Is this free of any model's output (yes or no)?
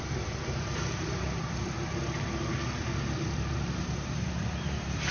no